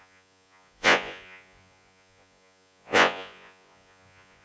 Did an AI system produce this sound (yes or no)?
yes